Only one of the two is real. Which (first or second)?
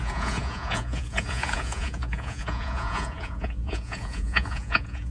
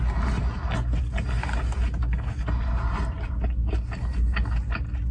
second